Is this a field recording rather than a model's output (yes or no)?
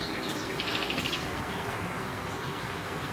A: no